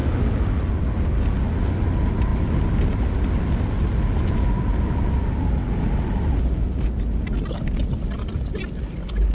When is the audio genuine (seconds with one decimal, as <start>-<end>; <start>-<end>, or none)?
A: 0.0-9.3